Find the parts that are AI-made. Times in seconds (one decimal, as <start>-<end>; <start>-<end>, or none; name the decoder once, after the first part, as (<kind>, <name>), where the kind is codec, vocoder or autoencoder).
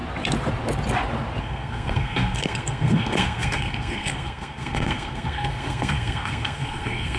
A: 1.4-7.2 (codec, SNAC)